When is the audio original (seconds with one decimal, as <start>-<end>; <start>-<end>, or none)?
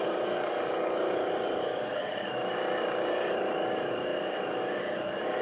2.4-3.1; 4.1-5.0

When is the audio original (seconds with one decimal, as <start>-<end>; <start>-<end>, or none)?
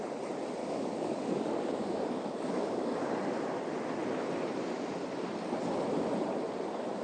0.0-0.6; 3.1-7.0